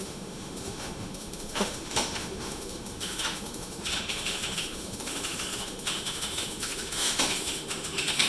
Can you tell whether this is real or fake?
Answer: fake